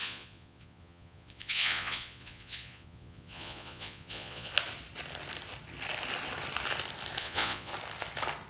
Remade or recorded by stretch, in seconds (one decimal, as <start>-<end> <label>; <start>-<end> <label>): 0.0-4.5 remade; 4.5-7.2 recorded; 7.2-7.7 remade; 7.7-8.5 recorded